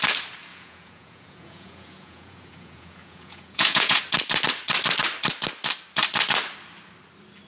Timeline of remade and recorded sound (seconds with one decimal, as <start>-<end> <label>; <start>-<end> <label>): 0.0-0.5 recorded; 0.5-4.0 remade; 4.0-7.5 recorded